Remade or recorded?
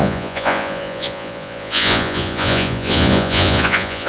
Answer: remade